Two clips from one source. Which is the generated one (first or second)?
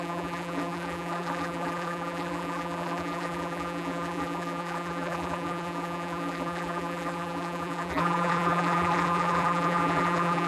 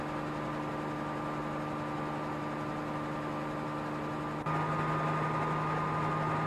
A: first